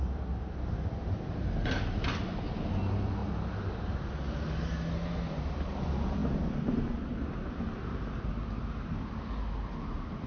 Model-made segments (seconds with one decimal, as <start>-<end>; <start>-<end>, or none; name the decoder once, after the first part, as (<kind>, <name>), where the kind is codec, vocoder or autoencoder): none